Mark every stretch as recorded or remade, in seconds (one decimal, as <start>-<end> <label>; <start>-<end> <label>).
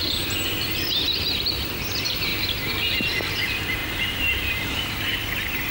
0.0-0.6 recorded; 0.6-2.3 remade; 2.3-2.9 recorded; 2.9-5.7 remade